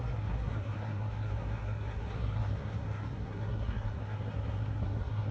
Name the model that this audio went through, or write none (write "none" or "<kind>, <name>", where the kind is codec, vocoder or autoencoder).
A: codec, SNAC